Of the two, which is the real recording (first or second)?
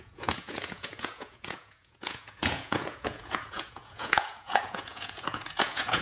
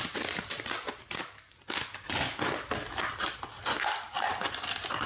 second